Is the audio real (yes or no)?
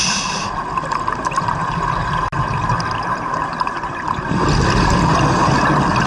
yes